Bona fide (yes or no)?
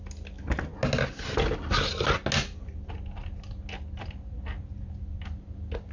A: yes